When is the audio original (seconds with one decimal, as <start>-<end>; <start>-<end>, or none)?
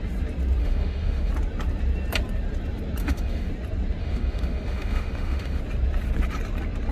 0.0-0.6; 1.3-3.0; 3.5-4.0; 5.6-6.9